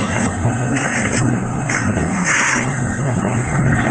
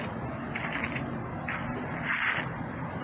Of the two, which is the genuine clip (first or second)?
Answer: second